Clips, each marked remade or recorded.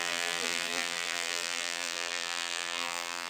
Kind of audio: remade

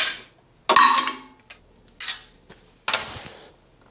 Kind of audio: recorded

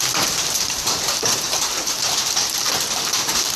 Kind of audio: remade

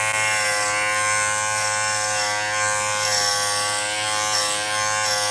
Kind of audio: recorded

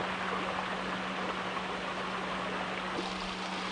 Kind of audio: recorded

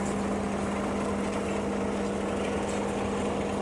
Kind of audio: recorded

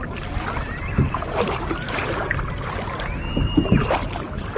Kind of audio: recorded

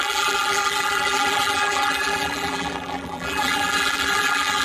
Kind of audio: remade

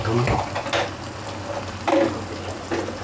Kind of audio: recorded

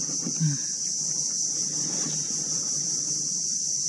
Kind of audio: recorded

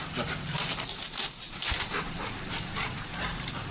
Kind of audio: remade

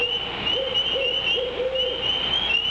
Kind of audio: recorded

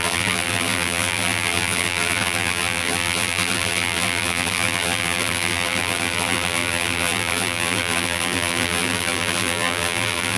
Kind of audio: remade